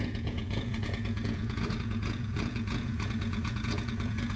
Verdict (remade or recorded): remade